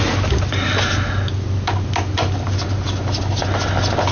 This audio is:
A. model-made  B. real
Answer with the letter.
B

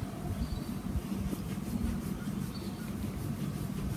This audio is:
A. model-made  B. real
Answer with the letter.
B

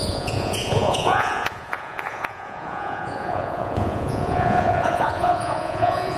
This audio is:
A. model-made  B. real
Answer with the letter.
A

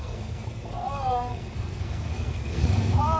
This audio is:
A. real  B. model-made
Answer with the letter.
B